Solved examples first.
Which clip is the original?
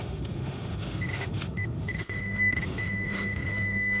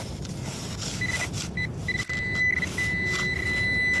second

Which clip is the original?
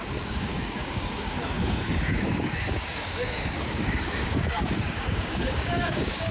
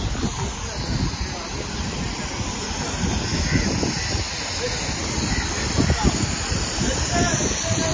second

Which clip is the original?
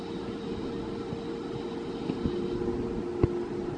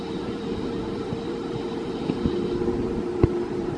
first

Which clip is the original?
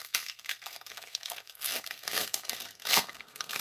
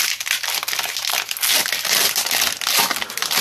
second